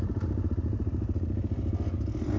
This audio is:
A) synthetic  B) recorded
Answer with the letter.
B